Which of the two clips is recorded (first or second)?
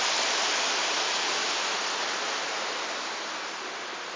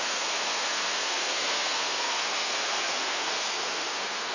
first